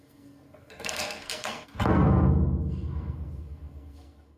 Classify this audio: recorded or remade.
remade